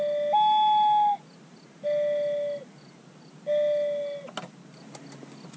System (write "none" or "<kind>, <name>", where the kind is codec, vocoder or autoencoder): none